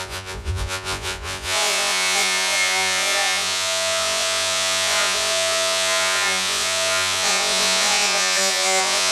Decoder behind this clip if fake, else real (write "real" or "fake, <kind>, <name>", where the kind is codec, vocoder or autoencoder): fake, vocoder, Vocos